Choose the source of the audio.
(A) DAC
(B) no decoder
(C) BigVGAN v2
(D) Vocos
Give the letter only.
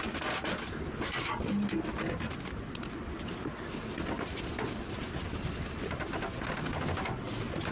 B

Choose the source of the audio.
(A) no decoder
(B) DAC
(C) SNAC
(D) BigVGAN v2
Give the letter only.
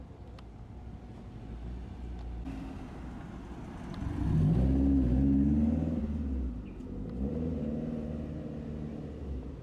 A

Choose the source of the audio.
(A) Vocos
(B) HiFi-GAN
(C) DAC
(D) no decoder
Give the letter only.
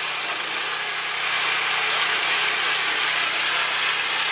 D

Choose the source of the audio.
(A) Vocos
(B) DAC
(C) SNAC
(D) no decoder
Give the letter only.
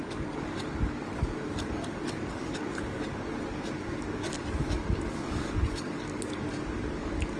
B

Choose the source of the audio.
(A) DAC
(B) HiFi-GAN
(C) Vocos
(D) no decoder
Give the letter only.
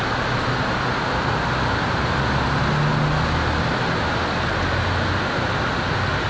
D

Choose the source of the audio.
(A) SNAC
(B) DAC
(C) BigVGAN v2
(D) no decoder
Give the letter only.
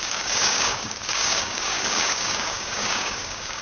B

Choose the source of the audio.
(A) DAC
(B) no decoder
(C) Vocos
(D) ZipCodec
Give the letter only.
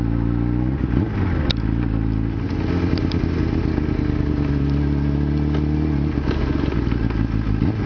B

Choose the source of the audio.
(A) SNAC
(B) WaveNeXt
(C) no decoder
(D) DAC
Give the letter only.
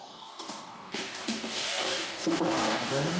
D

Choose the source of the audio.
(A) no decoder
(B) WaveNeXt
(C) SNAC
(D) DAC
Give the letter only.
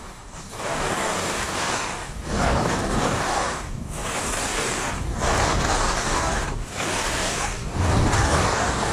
D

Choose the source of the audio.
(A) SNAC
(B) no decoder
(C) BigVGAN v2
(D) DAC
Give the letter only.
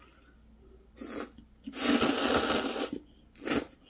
B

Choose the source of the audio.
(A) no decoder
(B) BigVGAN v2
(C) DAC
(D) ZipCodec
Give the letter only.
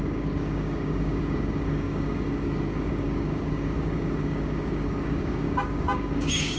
C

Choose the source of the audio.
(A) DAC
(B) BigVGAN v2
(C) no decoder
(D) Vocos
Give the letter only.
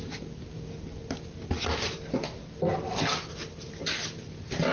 C